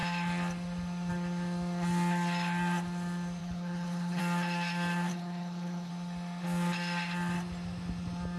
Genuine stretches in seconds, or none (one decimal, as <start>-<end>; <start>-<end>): 0.0-3.4; 4.2-5.1; 5.9-8.4